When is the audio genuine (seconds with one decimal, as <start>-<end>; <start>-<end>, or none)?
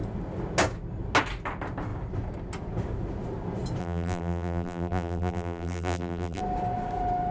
0.0-3.8; 6.4-7.3